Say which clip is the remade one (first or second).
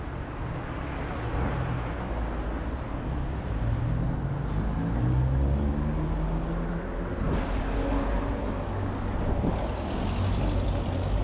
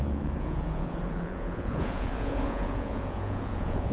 second